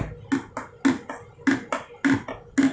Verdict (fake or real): real